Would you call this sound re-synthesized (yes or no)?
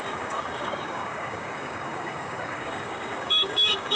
yes